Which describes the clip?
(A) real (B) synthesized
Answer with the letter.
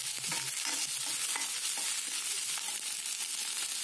A